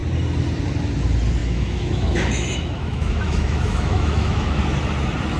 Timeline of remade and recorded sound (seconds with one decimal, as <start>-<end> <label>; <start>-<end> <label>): 0.0-1.4 recorded; 1.4-4.6 remade; 4.6-5.4 recorded